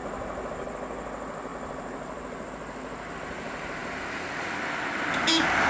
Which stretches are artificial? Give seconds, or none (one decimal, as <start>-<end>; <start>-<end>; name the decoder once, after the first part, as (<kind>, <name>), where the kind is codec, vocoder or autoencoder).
0.0-0.5 (vocoder, BigVGAN v2); 1.5-2.5